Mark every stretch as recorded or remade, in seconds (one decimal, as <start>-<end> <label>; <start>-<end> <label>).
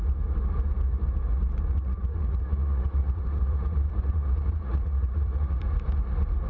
0.0-1.7 recorded; 1.7-5.6 remade; 5.6-6.5 recorded